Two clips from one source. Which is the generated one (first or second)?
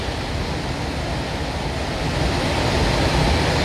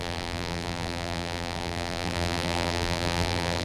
second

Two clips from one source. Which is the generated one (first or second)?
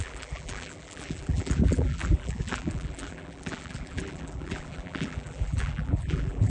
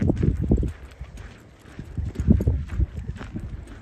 first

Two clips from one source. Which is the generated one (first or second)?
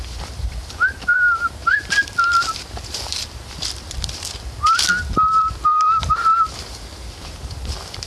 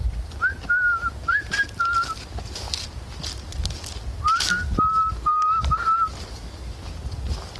first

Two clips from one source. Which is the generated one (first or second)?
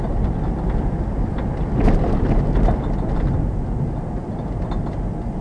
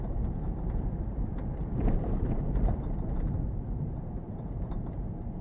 second